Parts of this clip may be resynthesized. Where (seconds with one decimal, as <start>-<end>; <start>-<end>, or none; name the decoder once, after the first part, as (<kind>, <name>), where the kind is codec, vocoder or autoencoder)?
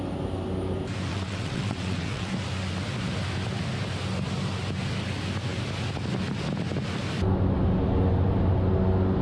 1.1-2.3 (vocoder, WaveNeXt)